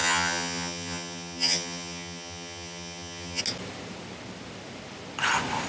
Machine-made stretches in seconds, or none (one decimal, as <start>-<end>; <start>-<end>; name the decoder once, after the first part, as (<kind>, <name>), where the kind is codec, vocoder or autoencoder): 0.0-3.4 (vocoder, HiFi-GAN)